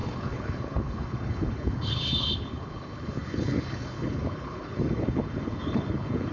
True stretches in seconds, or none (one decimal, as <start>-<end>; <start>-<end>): none